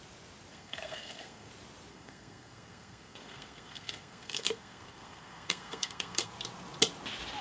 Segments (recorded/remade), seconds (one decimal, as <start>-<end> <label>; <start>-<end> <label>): 0.0-0.5 recorded; 0.5-1.5 remade; 1.5-1.9 recorded; 1.9-6.3 remade; 6.3-7.4 recorded